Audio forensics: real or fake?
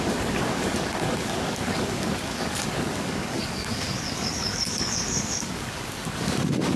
fake